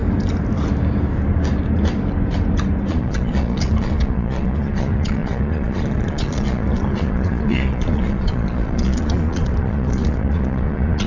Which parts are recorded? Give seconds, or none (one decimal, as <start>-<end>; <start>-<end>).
0.0-2.9